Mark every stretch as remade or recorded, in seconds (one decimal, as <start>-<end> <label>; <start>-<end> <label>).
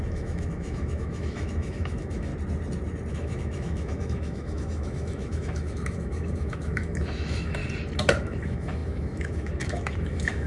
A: 0.0-2.3 remade; 2.3-3.1 recorded; 3.1-7.6 remade; 7.6-8.2 recorded; 8.2-10.5 remade